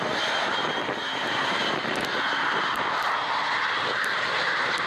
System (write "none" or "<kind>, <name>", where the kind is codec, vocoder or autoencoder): vocoder, BigVGAN v2